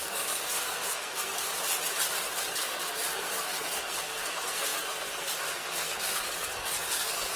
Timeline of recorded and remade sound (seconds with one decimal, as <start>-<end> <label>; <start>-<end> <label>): 0.0-1.5 remade; 1.5-2.5 recorded; 2.5-7.4 remade